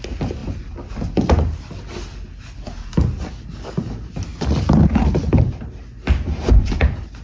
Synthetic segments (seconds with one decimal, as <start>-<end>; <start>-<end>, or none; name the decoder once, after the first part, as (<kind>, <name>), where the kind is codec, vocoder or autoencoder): none

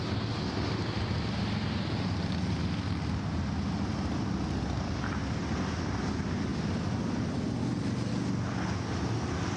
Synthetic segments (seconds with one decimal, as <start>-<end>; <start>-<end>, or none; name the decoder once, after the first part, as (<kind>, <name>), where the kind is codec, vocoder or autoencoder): 5.4-6.1 (vocoder, BigVGAN v2); 6.5-8.1

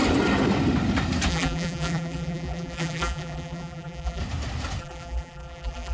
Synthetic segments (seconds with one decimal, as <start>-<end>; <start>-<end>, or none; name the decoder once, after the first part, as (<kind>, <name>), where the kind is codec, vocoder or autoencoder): 1.3-4.2 (vocoder, BigVGAN v2); 4.8-5.9

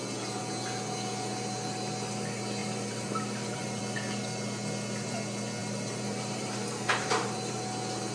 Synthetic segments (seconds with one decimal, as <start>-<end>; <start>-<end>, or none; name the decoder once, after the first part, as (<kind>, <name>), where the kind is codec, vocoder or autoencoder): 2.6-3.8 (vocoder, BigVGAN v2); 5.6-7.6

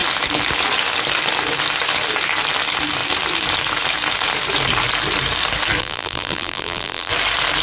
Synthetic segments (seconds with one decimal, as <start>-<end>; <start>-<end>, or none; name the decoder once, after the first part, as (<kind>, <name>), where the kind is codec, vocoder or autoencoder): 5.8-7.1 (vocoder, BigVGAN v2)